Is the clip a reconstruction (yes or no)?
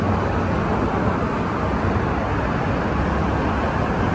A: no